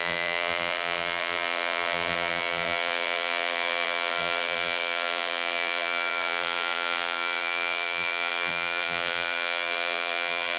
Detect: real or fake fake